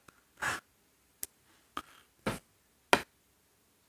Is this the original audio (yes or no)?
yes